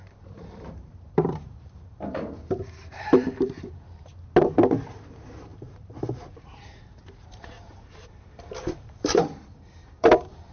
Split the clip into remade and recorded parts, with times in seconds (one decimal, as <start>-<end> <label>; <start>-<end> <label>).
0.0-4.1 remade; 4.1-4.9 recorded; 4.9-10.5 remade